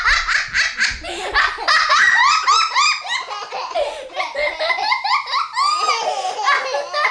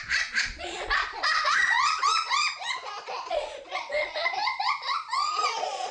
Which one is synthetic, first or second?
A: second